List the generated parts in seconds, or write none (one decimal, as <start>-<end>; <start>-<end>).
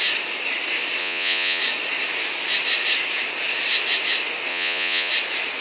1.0-1.6; 4.5-5.1